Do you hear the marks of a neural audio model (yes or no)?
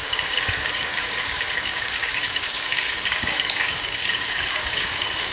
yes